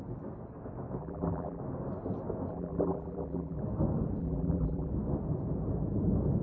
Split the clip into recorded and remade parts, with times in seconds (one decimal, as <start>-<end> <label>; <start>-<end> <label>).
0.0-1.0 recorded; 1.0-1.6 remade; 1.6-2.5 recorded; 2.5-3.6 remade; 3.6-4.2 recorded; 4.2-4.9 remade; 4.9-6.4 recorded